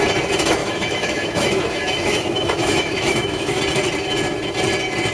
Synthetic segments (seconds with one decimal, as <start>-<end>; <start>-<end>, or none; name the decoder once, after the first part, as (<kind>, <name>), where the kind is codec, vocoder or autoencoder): 0.6-3.6 (autoencoder, DAC-VAE)